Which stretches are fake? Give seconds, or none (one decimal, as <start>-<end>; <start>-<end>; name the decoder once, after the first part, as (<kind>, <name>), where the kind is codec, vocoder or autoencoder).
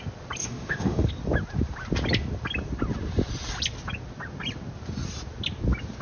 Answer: 0.4-1.1 (autoencoder, DAC-VAE)